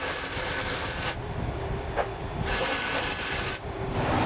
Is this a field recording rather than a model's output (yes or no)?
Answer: yes